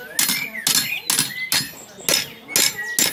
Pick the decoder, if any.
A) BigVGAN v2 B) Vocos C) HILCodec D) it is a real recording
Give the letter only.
D